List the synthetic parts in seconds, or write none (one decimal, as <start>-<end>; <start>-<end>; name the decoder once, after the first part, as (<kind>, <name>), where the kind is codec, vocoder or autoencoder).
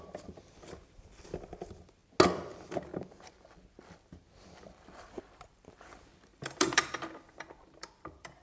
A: 0.0-2.0 (vocoder, BigVGAN v2); 2.5-2.9; 4.6-8.4